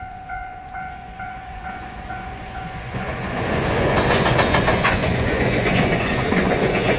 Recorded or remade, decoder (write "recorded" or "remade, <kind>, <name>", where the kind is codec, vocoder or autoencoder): remade, vocoder, Vocos